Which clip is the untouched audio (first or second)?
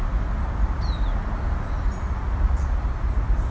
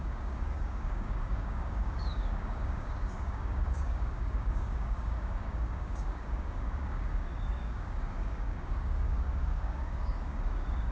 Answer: first